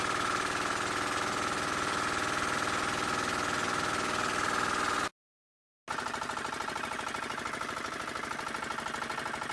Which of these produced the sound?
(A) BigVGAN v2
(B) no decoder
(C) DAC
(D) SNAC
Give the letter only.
B